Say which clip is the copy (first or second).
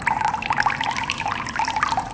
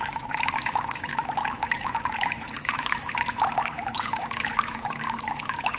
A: second